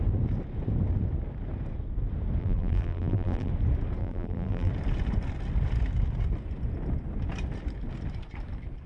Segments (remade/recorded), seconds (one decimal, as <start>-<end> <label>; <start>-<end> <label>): 0.0-2.4 recorded; 2.4-3.5 remade; 3.5-4.0 recorded; 4.0-4.7 remade; 4.7-8.9 recorded